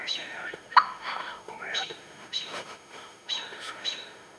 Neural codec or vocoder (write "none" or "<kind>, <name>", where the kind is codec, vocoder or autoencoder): autoencoder, DAC-VAE